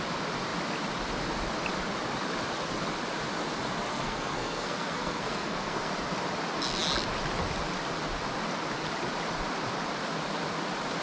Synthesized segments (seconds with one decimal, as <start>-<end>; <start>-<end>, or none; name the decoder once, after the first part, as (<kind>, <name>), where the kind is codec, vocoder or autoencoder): 3.9-5.9 (codec, SNAC)